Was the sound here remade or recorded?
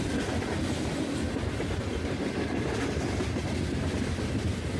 recorded